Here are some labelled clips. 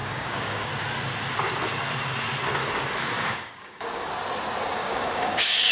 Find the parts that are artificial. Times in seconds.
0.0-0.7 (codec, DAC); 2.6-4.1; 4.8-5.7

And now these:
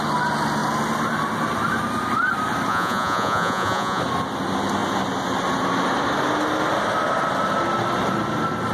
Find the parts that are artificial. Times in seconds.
2.7-4.0 (vocoder, Vocos)